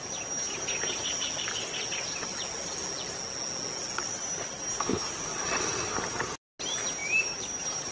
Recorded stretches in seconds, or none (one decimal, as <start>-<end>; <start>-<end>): 0.0-5.3; 5.9-7.9